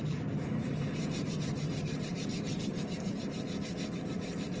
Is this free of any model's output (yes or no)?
no